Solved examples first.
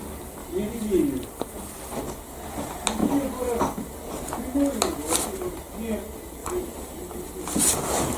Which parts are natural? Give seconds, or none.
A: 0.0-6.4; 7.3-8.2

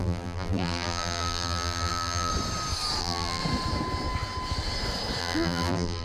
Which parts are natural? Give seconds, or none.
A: 2.3-3.0; 3.4-5.2

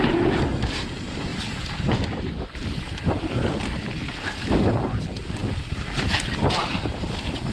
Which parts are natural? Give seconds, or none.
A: 0.0-1.3; 4.1-7.5

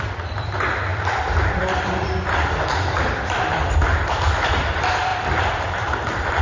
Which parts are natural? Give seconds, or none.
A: none

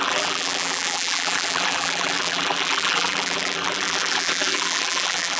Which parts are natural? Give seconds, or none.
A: none